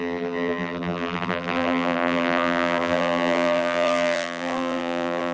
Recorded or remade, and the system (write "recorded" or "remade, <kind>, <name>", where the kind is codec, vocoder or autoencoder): remade, vocoder, BigVGAN v2